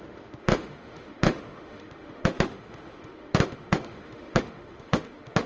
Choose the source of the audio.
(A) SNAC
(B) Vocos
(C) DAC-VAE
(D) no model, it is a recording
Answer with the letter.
C